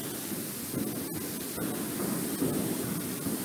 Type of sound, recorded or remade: recorded